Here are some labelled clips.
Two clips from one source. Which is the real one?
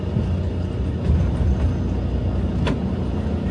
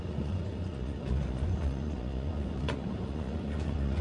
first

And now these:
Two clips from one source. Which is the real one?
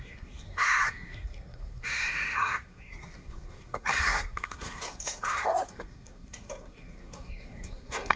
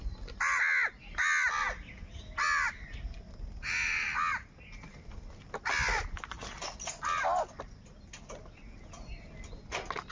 second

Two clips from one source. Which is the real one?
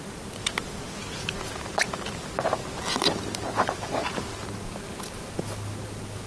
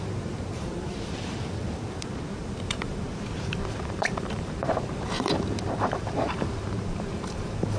first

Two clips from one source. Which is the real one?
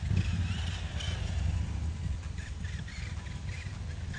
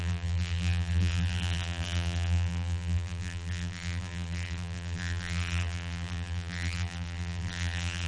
first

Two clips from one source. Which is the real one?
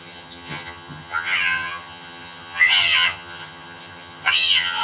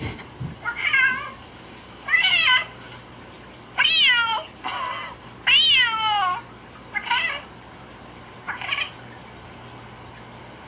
second